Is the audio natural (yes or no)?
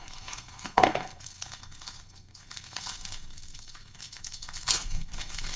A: no